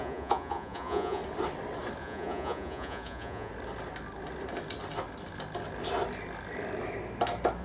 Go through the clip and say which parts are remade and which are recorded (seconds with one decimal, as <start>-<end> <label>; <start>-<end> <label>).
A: 0.0-1.2 remade; 1.2-2.0 recorded; 2.0-3.5 remade; 3.5-7.6 recorded